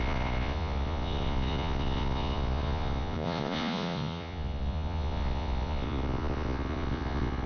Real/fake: fake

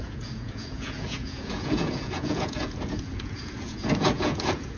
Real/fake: fake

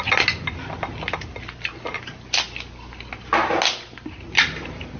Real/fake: real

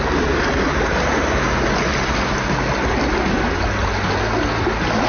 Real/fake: real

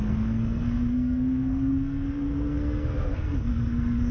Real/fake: fake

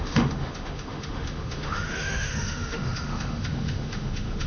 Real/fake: fake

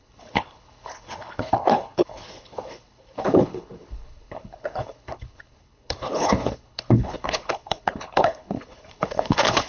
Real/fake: fake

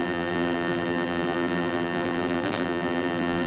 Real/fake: fake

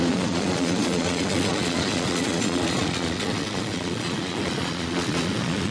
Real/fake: fake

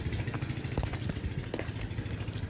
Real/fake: real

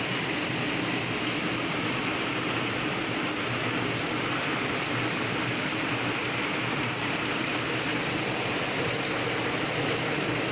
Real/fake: real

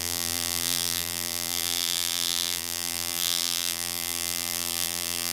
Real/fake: fake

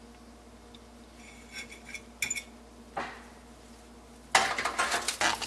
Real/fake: real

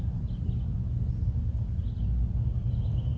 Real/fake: real